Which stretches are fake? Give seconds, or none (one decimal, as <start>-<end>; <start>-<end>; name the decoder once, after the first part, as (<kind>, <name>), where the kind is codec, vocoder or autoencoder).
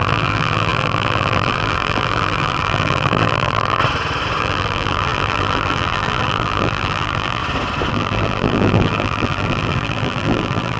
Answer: 0.0-3.8 (vocoder, BigVGAN v2); 4.4-7.4; 7.9-10.8